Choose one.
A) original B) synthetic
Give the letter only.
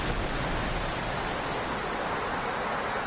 A